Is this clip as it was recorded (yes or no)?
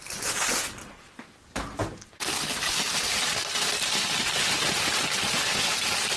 yes